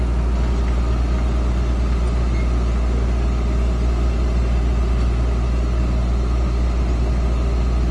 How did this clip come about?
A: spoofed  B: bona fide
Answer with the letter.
B